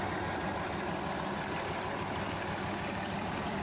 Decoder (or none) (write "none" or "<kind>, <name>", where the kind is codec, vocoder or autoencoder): none